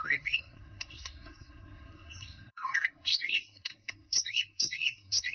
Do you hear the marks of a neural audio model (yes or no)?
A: yes